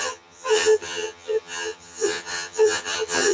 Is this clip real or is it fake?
fake